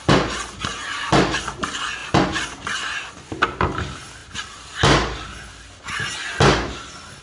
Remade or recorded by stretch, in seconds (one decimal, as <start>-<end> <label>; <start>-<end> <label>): 0.0-7.2 recorded